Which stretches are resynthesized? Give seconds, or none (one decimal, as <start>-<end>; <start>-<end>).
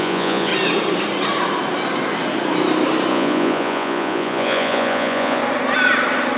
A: 0.0-0.5; 3.1-5.4